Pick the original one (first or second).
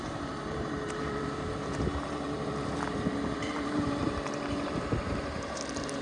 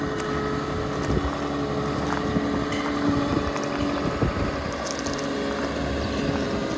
second